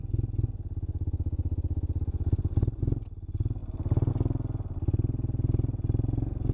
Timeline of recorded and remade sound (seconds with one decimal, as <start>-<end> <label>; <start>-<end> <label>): 0.0-6.5 recorded